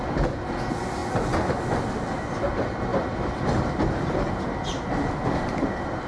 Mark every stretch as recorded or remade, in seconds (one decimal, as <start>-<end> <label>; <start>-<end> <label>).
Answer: 0.0-2.9 recorded; 2.9-6.1 remade